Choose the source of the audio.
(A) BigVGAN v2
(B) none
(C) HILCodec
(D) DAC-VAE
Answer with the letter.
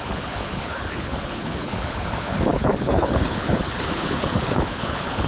C